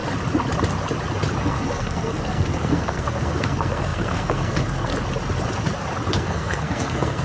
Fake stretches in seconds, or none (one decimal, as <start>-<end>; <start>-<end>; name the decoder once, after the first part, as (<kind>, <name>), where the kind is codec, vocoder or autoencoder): 1.4-4.9 (codec, SNAC); 6.1-7.2